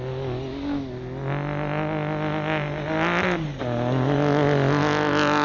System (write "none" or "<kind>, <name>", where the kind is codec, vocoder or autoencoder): none